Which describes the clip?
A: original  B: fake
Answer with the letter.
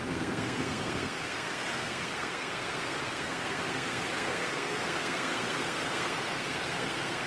B